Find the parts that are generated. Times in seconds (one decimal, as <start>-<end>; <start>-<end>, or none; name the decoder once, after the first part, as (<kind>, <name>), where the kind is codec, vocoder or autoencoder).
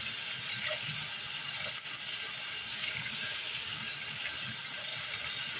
2.7-3.8 (codec, DAC)